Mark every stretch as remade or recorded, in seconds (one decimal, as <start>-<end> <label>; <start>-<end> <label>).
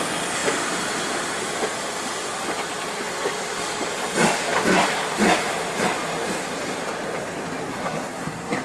0.0-7.7 recorded; 7.7-8.6 remade